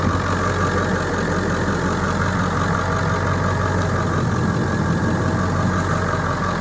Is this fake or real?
real